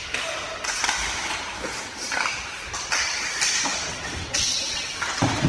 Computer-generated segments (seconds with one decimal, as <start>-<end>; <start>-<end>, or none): 3.9-4.9